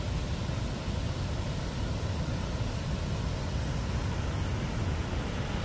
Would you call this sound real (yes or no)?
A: yes